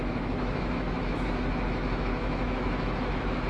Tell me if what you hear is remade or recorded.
remade